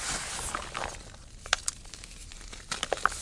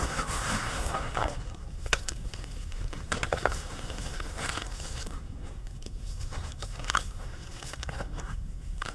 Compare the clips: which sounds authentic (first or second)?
first